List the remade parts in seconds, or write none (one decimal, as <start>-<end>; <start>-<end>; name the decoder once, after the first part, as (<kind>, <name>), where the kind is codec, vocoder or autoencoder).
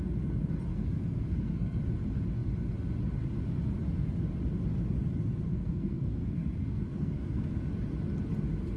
0.7-1.8 (codec, SNAC); 5.5-7.6